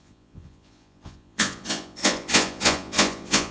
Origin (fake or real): fake